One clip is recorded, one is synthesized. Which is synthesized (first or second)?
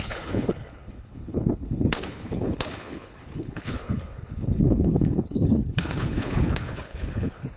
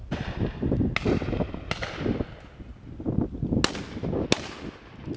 first